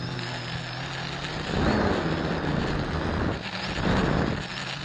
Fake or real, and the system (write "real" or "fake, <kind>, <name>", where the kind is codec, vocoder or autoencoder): real